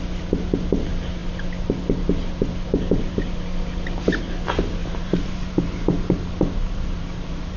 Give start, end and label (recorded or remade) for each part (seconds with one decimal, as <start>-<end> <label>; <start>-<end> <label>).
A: 0.0-4.8 recorded; 4.8-5.8 remade; 5.8-6.6 recorded; 6.6-7.6 remade